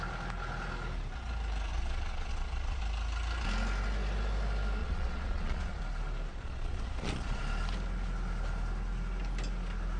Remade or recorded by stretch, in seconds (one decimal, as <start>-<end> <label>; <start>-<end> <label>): 0.0-1.7 recorded; 1.7-2.8 remade; 2.8-4.8 recorded; 4.8-5.8 remade; 5.8-6.3 recorded; 6.3-7.4 remade; 7.4-10.0 recorded